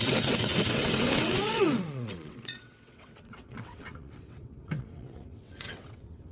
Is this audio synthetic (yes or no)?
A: yes